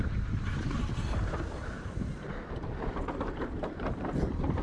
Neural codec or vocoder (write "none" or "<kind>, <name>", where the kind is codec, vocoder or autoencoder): vocoder, BigVGAN v2